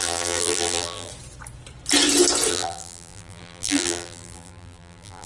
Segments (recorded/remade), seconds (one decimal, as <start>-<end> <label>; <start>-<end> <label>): 0.0-1.1 remade; 1.1-2.5 recorded; 2.5-5.3 remade

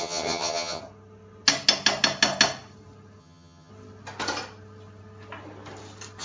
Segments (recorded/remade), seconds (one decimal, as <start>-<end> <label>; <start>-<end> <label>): 0.0-0.8 remade; 0.8-3.2 recorded; 3.2-3.7 remade; 3.7-6.2 recorded

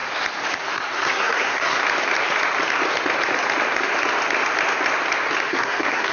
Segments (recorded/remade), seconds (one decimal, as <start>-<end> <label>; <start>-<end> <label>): 0.0-0.6 recorded; 0.6-1.8 remade; 1.8-5.5 recorded; 5.5-6.1 remade

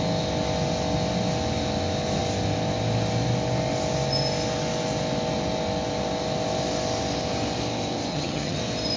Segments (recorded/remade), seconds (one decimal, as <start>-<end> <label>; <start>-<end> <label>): 0.0-8.1 recorded; 8.1-8.6 remade; 8.6-9.0 recorded

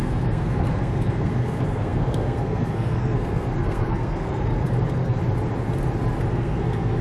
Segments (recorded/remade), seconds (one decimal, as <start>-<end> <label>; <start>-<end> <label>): 0.0-5.2 remade; 5.2-6.3 recorded; 6.3-7.0 remade